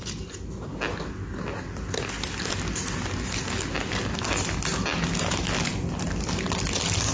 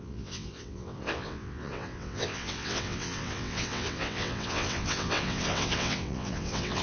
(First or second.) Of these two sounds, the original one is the first